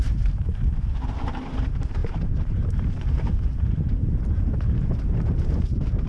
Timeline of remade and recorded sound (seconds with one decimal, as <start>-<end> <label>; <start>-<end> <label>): 0.0-6.1 remade